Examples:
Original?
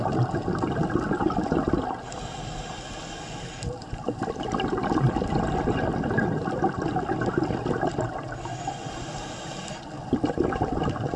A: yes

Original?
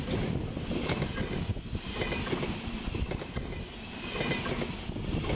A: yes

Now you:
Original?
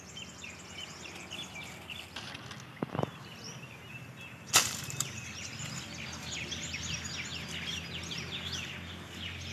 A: yes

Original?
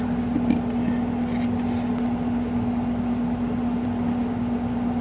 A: yes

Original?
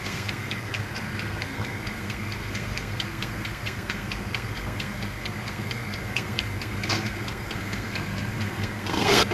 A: no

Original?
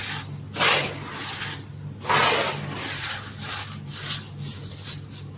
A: yes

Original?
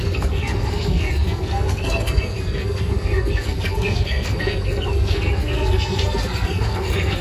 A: no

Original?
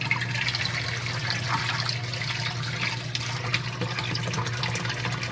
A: yes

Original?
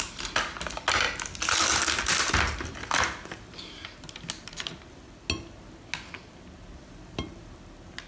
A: yes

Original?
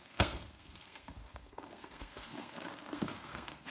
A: no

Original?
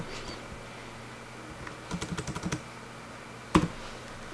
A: yes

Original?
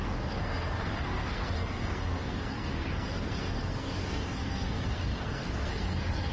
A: no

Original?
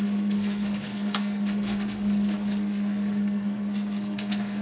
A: no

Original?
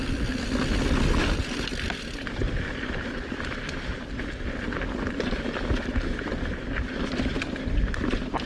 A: yes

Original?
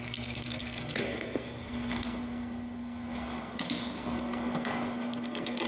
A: no